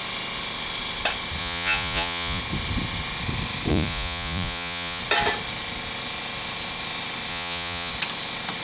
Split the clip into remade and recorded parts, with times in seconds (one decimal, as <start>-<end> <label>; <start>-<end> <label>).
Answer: 0.0-1.4 recorded; 1.4-2.4 remade; 2.4-3.7 recorded; 3.7-5.0 remade; 5.0-7.3 recorded; 7.3-7.9 remade; 7.9-8.6 recorded